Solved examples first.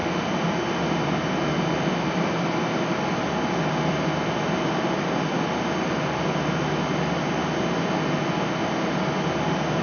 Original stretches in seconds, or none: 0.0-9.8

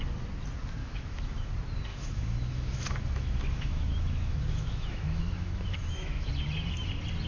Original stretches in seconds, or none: 0.0-0.8; 1.5-1.9; 6.3-7.3

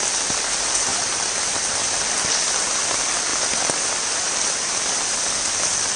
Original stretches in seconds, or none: 0.9-1.9; 3.3-3.9

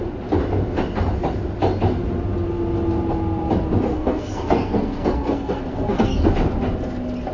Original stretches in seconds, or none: 0.0-3.9; 6.3-7.3